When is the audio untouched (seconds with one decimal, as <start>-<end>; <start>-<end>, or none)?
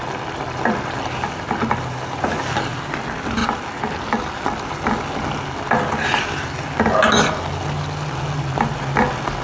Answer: 0.0-9.4